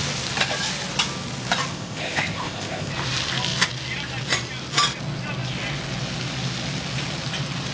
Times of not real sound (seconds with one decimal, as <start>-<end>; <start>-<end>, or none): 1.7-2.9